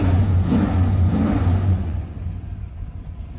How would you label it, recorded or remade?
remade